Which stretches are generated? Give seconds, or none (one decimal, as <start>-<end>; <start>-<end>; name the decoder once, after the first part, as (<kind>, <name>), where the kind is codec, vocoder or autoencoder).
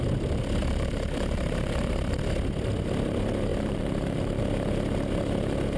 0.6-2.2 (vocoder, BigVGAN v2); 3.5-4.4